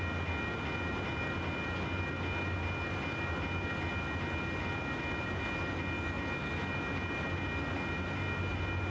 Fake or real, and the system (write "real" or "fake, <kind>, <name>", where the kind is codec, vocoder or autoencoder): real